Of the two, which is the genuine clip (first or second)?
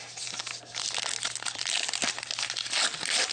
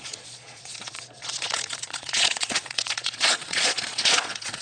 first